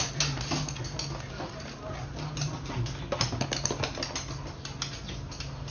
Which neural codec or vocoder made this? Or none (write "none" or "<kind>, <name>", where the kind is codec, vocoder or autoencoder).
none